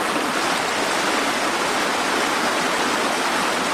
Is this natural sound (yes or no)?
yes